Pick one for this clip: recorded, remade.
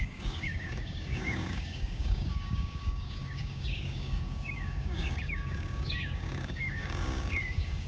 remade